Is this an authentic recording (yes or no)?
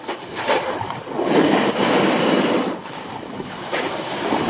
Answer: no